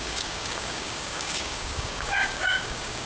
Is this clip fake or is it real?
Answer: fake